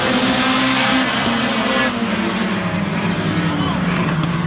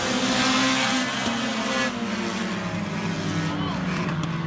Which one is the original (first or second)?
second